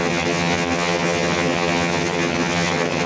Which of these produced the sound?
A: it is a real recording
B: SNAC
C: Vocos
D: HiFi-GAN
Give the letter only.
D